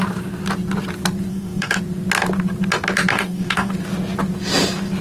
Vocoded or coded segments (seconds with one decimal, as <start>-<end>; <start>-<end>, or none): 1.3-1.8; 3.1-3.7